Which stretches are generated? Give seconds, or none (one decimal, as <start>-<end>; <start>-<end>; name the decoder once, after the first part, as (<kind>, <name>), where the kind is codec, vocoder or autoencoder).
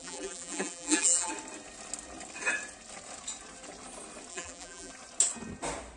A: 0.0-1.3 (vocoder, BigVGAN v2); 4.3-4.9